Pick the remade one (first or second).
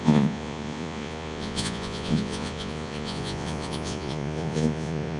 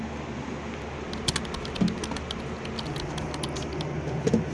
first